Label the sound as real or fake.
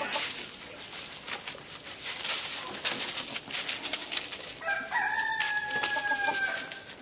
real